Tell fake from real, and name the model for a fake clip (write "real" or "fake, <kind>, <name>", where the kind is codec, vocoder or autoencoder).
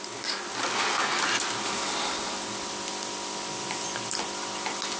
real